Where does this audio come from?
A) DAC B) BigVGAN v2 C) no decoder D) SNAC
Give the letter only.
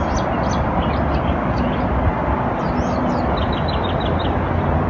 C